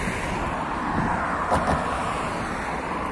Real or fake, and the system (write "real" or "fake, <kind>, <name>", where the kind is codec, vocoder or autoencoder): real